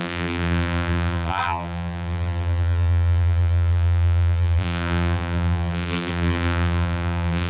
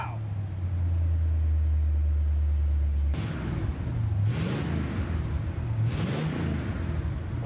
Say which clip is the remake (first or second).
first